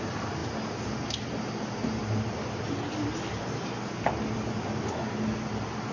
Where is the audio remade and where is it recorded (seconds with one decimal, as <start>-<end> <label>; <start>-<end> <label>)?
0.0-2.0 remade; 2.0-5.5 recorded; 5.5-5.9 remade